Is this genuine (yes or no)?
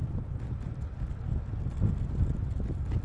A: yes